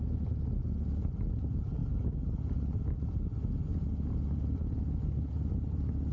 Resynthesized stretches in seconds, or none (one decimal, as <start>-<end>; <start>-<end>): none

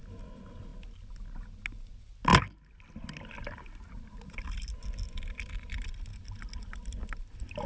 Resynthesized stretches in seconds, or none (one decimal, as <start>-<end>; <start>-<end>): none

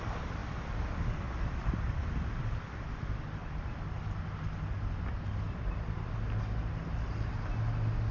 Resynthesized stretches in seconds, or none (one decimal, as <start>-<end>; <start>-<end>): none

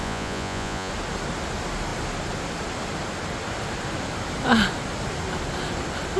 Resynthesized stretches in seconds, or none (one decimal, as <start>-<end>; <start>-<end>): 0.0-0.9

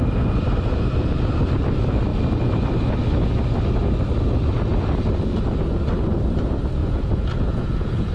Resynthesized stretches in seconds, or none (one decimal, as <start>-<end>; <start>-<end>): 6.8-8.1

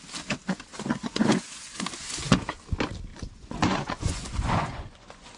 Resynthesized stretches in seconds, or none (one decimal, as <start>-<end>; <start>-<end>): 0.7-2.6; 3.1-5.4